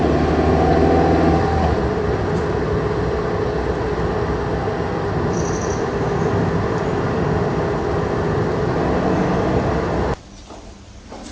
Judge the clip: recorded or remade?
recorded